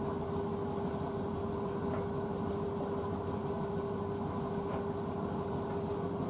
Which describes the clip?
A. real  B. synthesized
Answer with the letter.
A